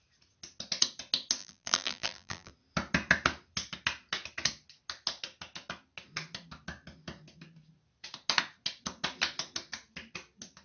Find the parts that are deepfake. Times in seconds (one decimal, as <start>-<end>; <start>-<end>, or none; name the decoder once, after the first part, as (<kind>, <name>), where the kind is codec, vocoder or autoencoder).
1.4-2.5 (vocoder, BigVGAN v2)